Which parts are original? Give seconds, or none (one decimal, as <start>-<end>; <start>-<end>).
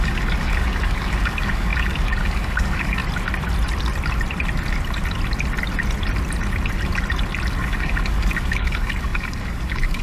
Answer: 3.0-7.6